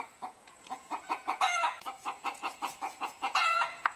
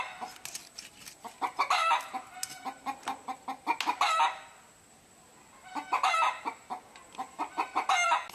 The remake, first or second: first